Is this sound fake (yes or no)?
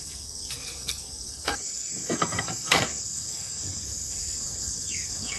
yes